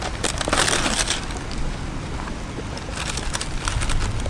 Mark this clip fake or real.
real